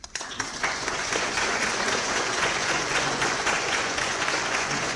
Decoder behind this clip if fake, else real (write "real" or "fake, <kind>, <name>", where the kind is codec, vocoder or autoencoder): fake, vocoder, Vocos